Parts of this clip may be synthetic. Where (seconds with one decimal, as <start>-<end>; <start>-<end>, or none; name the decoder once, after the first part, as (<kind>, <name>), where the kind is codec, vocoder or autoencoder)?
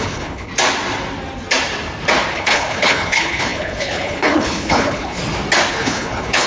0.0-0.5 (codec, HILCodec); 2.3-5.2; 5.7-6.5